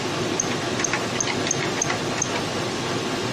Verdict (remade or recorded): recorded